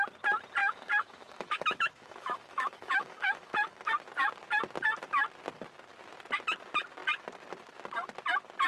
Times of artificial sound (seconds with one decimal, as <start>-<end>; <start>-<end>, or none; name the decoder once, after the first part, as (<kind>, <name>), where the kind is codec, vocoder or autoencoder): 0.6-3.9 (autoencoder, DAC-VAE)